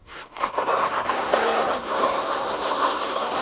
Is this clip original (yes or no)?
no